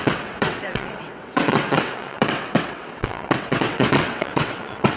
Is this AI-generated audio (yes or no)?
yes